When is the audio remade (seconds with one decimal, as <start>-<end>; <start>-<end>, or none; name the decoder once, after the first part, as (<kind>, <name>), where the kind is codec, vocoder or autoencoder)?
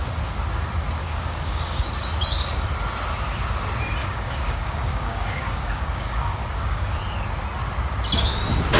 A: 1.0-1.9 (codec, DAC); 4.0-7.0